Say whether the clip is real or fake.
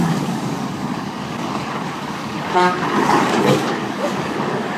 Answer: fake